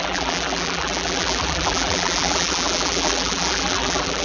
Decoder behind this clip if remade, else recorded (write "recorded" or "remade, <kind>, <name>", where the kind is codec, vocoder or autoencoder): remade, vocoder, BigVGAN v2